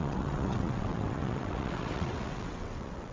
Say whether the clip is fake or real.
fake